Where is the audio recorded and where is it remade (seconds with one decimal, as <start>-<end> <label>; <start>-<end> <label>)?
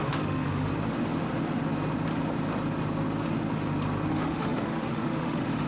0.0-0.7 remade; 0.7-4.1 recorded; 4.1-5.7 remade